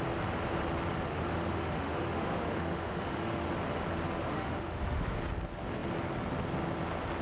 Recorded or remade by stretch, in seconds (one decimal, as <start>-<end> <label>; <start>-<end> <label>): 0.0-1.1 recorded; 1.1-3.5 remade; 3.5-4.2 recorded; 4.2-5.2 remade; 5.2-7.2 recorded